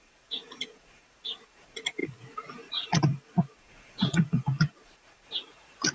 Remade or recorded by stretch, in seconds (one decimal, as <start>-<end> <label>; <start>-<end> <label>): 0.0-5.9 remade